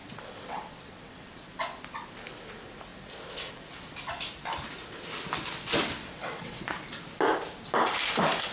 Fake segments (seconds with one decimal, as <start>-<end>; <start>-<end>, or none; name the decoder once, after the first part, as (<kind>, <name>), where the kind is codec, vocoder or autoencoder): 0.0-1.3 (vocoder, WaveNeXt); 6.0-6.6